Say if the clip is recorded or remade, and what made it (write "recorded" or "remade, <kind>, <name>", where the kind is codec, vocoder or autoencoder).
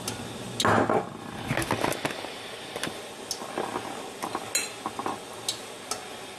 recorded